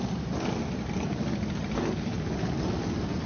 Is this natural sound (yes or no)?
yes